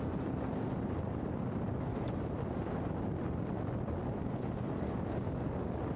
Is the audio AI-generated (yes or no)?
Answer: no